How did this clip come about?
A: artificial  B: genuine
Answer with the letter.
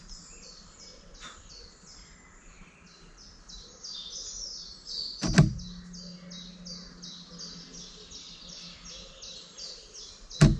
B